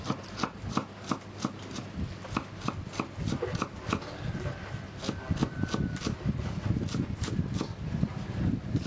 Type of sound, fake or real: real